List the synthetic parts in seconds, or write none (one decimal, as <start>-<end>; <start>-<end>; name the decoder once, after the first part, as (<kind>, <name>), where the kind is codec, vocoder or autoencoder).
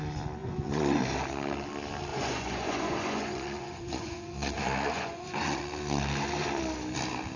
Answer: 0.4-1.0 (vocoder, Vocos); 2.1-5.6